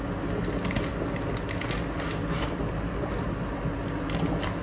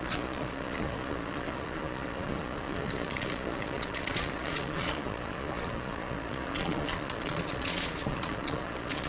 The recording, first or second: first